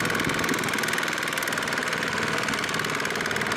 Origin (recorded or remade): recorded